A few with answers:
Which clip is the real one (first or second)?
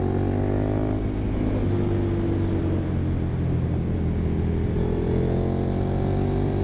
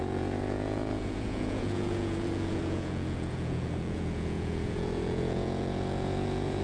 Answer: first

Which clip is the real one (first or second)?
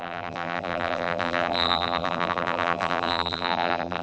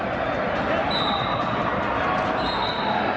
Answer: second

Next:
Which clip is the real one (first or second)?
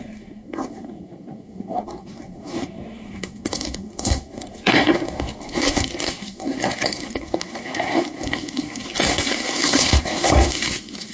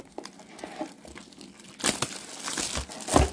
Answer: second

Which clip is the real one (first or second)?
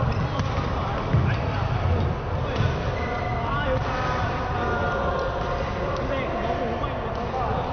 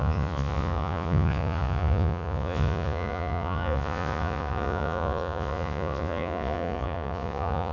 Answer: first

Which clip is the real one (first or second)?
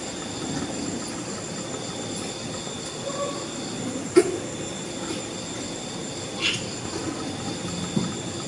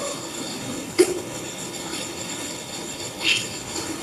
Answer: first